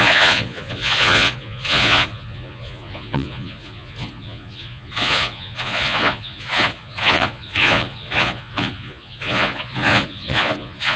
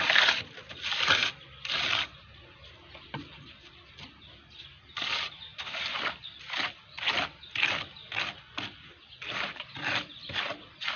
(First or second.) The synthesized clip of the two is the first